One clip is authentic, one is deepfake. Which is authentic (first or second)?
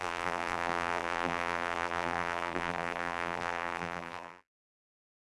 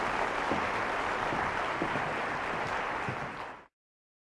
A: second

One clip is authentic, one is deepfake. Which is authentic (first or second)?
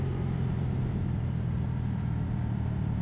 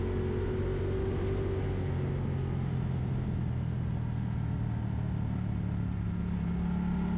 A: second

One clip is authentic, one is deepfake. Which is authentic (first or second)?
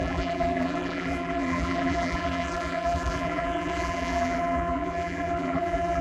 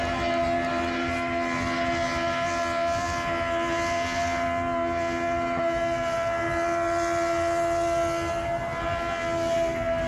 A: second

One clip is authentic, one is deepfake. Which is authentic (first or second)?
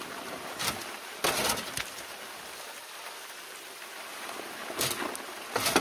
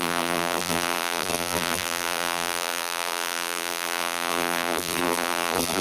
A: first